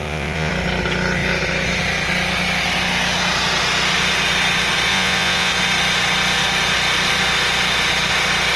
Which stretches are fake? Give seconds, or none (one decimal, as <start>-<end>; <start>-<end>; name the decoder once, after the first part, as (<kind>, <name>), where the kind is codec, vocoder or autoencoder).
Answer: 0.0-0.5 (vocoder, Vocos); 4.9-5.5